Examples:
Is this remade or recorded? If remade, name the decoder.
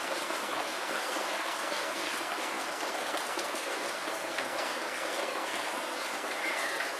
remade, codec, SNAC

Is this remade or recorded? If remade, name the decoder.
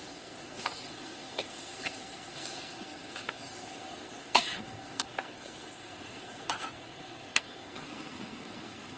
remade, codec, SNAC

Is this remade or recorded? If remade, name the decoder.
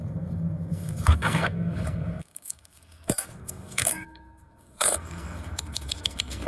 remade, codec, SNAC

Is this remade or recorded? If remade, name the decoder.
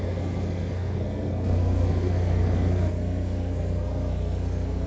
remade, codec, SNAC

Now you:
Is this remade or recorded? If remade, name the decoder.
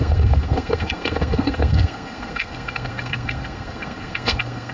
remade, codec, SNAC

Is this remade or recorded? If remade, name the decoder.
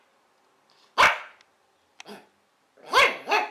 recorded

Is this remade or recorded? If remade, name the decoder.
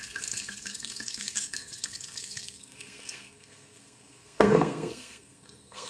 remade, codec, SNAC